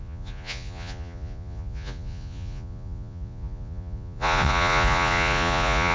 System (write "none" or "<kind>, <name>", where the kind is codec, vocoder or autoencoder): vocoder, Vocos